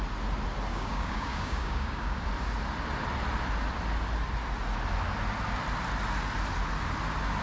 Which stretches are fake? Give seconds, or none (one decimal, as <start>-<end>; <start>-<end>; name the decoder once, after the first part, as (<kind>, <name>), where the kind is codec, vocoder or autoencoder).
0.7-2.2 (codec, DAC)